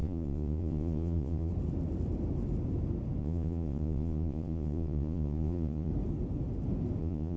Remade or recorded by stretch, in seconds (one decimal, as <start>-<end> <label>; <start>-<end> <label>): 0.0-1.5 remade; 1.5-3.2 recorded; 3.2-5.9 remade; 5.9-7.0 recorded; 7.0-7.4 remade